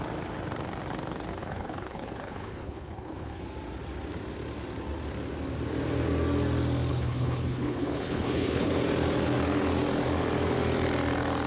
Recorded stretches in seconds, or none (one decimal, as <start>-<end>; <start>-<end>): 0.0-1.4; 3.4-6.9; 8.7-11.5